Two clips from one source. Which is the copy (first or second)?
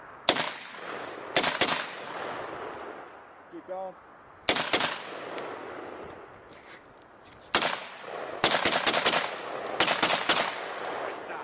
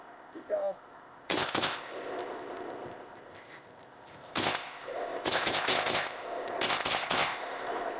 second